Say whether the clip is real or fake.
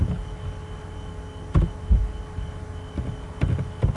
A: real